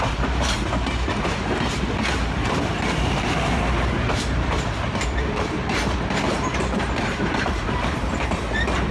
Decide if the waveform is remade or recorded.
remade